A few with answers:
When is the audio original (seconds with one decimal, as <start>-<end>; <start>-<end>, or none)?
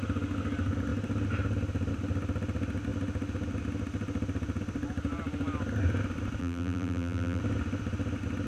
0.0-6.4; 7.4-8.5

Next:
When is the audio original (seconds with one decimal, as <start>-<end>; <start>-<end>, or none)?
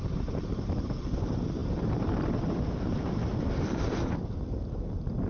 none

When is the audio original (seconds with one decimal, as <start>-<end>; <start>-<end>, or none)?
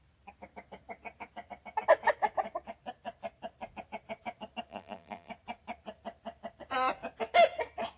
0.0-4.7; 5.3-8.0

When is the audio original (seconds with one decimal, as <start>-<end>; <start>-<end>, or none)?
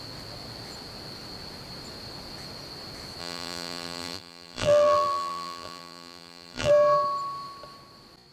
0.0-3.2; 6.7-8.3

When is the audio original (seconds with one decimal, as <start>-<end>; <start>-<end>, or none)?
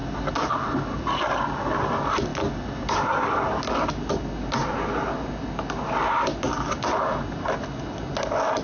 0.0-8.6